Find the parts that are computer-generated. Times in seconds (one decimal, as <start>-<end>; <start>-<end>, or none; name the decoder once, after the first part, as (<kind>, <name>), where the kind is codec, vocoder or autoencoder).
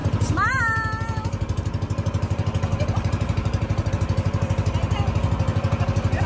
0.0-0.6 (vocoder, BigVGAN v2); 2.7-3.9